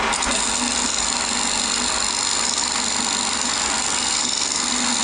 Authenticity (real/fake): real